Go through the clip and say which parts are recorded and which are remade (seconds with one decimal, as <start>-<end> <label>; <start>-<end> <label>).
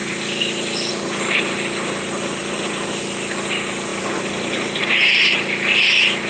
0.0-0.9 remade; 0.9-2.4 recorded; 2.4-3.0 remade; 3.0-3.9 recorded; 3.9-4.8 remade; 4.8-6.3 recorded